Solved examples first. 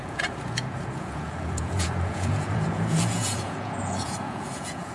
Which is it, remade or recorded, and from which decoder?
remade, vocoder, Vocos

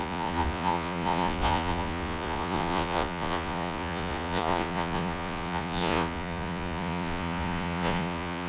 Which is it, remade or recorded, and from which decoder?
remade, vocoder, Vocos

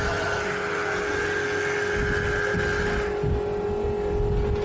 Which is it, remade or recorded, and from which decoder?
recorded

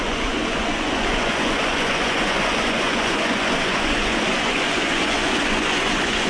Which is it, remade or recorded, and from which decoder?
remade, vocoder, Vocos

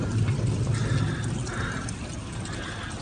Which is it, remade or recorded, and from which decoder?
recorded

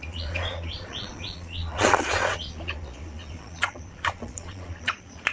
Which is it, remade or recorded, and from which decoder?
remade, vocoder, Vocos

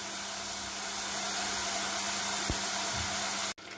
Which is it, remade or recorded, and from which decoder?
recorded